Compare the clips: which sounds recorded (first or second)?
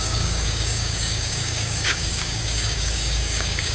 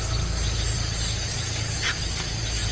second